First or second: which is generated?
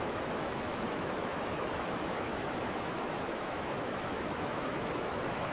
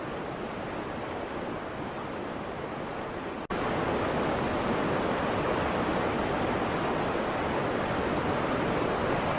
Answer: first